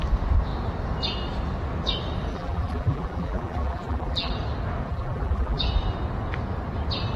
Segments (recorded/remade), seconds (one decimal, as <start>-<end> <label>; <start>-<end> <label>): 0.0-2.3 recorded; 2.3-4.3 remade; 4.3-4.9 recorded; 4.9-5.6 remade; 5.6-7.2 recorded